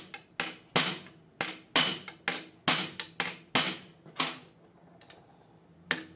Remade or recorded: recorded